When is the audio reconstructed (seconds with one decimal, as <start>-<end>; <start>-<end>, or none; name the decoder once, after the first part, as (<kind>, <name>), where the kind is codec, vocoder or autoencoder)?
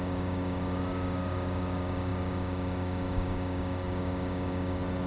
none